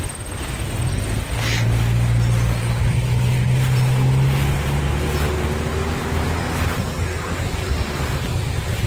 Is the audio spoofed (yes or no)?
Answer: yes